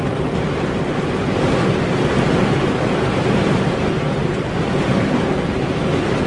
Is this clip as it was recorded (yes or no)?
yes